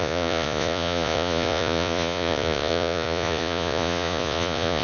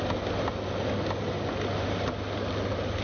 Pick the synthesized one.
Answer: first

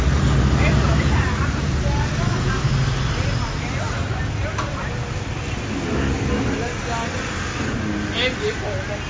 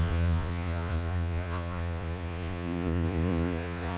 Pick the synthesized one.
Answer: second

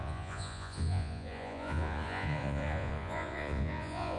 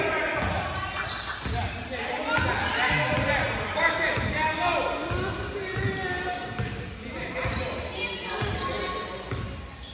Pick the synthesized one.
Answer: first